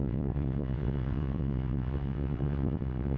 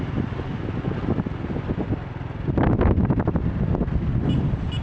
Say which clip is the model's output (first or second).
first